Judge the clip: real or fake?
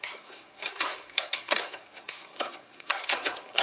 fake